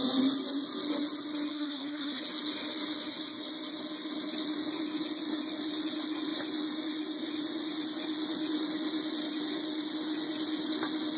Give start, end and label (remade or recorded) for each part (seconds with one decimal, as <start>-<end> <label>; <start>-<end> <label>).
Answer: 0.0-1.5 recorded; 1.5-2.2 remade; 2.2-11.2 recorded